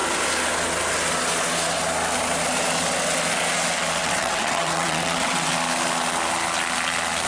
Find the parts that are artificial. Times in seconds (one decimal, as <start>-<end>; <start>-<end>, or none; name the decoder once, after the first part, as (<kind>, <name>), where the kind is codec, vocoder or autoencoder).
4.0-5.5 (vocoder, WaveNeXt)